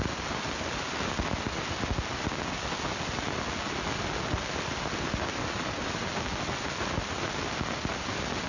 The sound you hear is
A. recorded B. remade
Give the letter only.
A